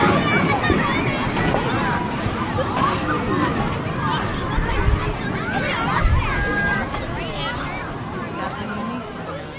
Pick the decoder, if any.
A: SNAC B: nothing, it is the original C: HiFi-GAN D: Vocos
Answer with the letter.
B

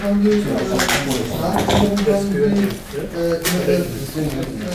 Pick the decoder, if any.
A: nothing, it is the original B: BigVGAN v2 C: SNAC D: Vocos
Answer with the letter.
A